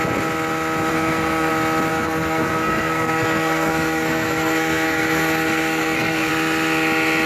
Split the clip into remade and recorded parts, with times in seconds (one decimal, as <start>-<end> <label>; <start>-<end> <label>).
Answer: 0.0-0.9 recorded; 0.9-1.5 remade; 1.5-1.9 recorded; 1.9-6.3 remade; 6.3-7.3 recorded